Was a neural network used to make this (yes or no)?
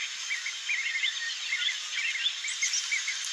no